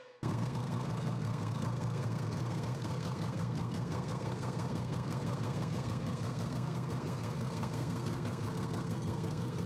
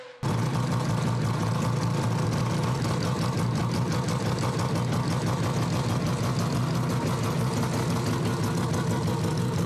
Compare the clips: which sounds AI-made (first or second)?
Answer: first